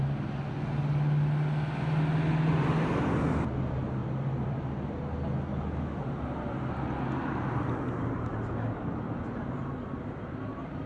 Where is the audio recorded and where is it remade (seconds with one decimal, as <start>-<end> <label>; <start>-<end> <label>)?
0.0-4.0 recorded; 4.0-5.0 remade; 5.0-10.9 recorded

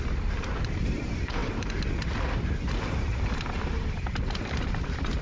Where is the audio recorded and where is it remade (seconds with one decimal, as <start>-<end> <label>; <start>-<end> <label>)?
0.0-5.2 remade

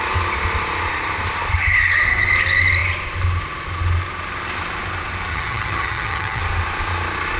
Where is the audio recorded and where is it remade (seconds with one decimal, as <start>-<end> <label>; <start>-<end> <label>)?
0.0-5.3 recorded; 5.3-6.4 remade; 6.4-7.4 recorded

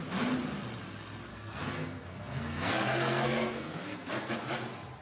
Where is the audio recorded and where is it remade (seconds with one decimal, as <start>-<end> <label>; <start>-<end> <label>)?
0.0-1.3 recorded; 1.3-4.3 remade; 4.3-5.0 recorded

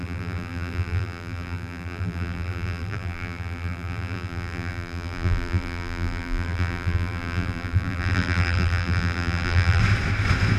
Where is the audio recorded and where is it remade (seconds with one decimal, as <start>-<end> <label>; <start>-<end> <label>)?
0.0-9.8 remade; 9.8-10.6 recorded